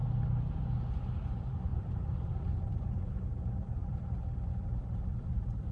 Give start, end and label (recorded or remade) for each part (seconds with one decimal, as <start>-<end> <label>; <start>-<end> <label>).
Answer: 0.0-0.9 recorded; 0.9-5.7 remade